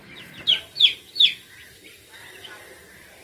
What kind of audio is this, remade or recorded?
remade